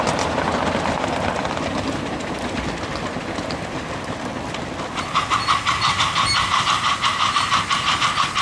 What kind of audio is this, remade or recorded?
recorded